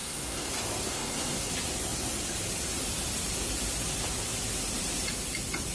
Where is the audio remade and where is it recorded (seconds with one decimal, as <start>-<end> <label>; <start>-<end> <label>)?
0.0-0.5 remade; 0.5-0.9 recorded; 0.9-1.5 remade; 1.5-5.7 recorded